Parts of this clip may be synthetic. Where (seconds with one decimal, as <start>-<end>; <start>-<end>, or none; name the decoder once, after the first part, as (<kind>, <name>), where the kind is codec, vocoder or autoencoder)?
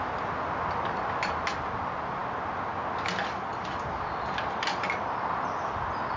none